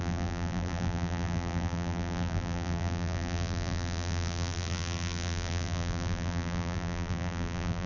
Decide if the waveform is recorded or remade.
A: remade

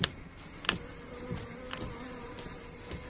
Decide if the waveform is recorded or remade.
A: recorded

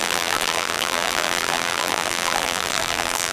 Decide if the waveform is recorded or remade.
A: remade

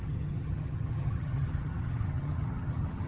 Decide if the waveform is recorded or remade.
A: remade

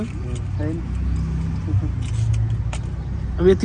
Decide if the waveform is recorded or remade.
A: recorded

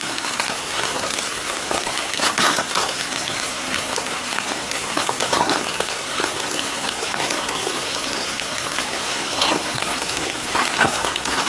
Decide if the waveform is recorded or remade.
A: remade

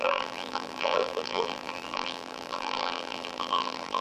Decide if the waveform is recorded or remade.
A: remade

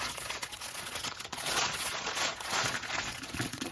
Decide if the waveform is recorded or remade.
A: remade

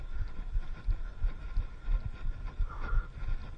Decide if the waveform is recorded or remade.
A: recorded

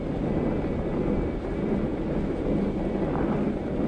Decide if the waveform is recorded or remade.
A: recorded